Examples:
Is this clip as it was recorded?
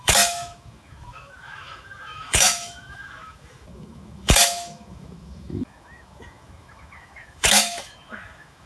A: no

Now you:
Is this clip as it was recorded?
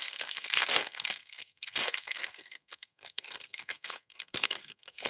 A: no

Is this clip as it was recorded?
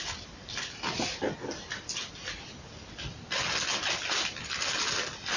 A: yes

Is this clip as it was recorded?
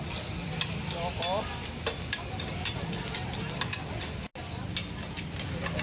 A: yes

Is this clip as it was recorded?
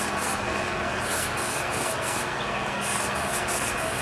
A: no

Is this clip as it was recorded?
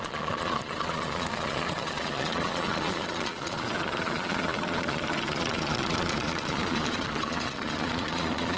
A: no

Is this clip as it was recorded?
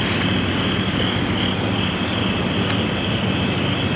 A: yes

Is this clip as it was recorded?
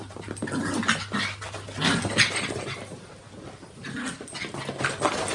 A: yes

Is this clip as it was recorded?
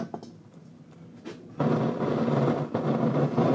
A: yes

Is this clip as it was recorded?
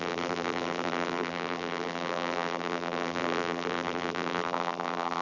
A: no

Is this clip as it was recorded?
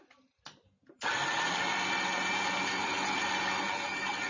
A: yes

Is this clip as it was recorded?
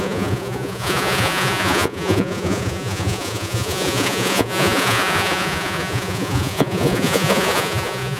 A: no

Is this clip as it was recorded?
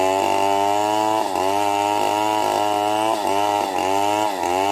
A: yes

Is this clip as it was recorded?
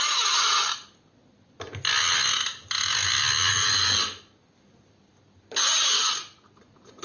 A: yes